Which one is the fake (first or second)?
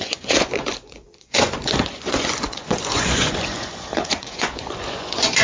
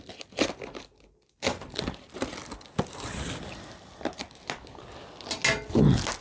first